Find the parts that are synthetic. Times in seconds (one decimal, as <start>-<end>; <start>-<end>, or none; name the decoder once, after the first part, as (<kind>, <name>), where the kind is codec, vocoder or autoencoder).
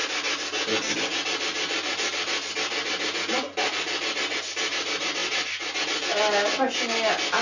none